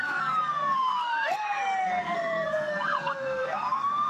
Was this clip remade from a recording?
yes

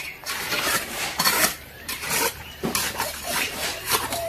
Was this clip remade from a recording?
yes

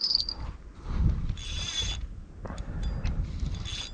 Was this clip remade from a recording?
no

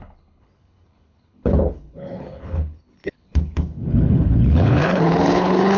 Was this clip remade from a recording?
yes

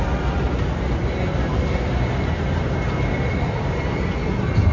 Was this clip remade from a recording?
no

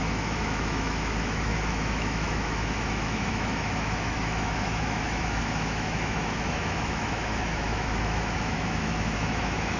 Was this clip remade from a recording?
yes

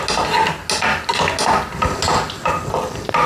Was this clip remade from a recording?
no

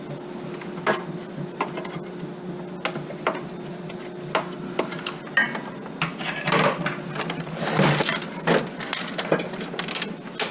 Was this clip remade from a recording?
no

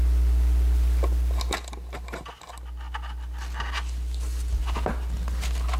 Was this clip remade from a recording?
no